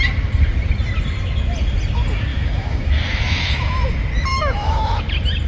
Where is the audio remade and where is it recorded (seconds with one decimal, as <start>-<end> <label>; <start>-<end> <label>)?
0.0-2.3 recorded; 2.3-3.9 remade; 3.9-4.3 recorded; 4.3-5.0 remade; 5.0-5.5 recorded